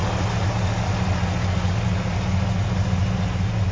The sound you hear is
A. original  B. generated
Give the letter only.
A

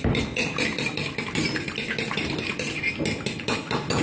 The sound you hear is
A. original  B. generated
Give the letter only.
A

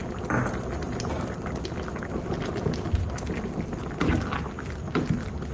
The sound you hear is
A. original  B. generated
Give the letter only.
A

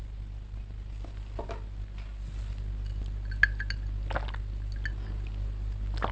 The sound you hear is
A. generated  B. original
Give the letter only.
B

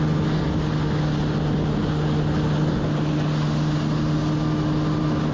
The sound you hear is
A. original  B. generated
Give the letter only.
A